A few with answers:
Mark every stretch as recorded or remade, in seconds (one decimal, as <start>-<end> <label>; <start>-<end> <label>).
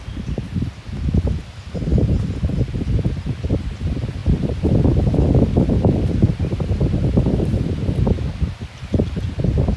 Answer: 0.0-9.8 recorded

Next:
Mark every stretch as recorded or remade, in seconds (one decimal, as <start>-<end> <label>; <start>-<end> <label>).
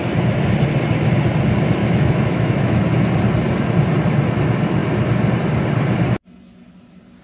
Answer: 0.0-1.8 recorded; 1.8-2.8 remade; 2.8-7.2 recorded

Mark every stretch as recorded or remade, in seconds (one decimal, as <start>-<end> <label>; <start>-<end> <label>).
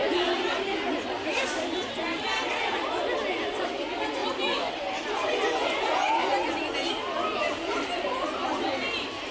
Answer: 0.0-9.3 recorded